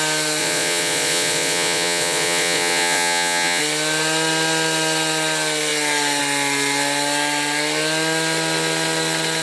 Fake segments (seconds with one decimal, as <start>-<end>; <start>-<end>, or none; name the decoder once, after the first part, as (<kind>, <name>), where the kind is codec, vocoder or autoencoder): 0.4-3.6 (vocoder, Vocos)